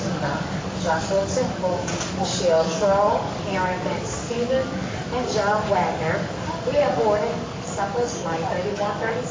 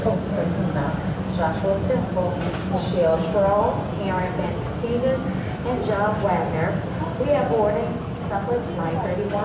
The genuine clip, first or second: second